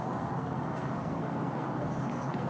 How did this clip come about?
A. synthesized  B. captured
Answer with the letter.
A